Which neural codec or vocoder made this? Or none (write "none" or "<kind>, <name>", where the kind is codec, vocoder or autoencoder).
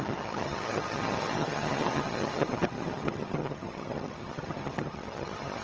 vocoder, HiFi-GAN